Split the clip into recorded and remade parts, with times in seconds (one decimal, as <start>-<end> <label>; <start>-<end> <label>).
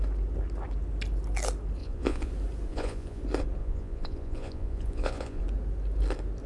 0.0-1.8 recorded; 1.8-2.3 remade; 2.3-2.7 recorded; 2.7-3.2 remade; 3.2-3.6 recorded; 3.6-5.4 remade; 5.4-6.5 recorded